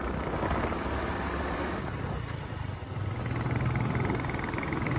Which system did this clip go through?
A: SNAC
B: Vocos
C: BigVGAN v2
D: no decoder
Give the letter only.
D